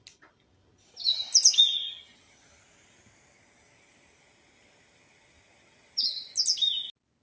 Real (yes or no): yes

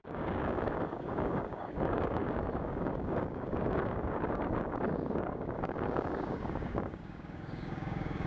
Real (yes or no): no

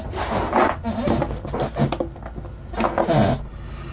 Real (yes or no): yes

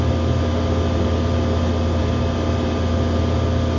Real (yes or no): yes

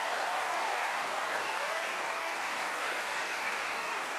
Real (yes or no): no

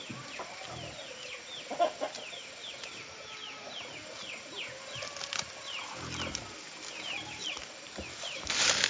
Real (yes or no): yes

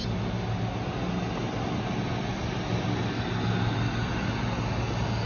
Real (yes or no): yes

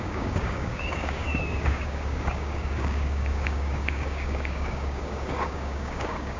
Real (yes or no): no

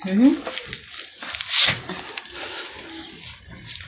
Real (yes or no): yes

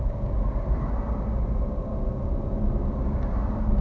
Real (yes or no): yes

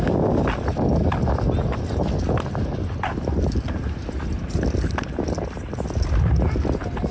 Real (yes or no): yes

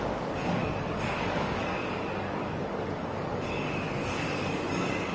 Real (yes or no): no